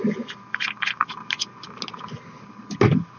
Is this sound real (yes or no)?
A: yes